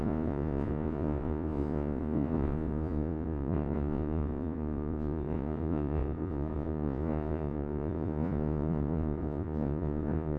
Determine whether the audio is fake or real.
fake